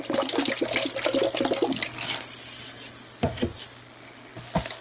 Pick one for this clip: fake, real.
real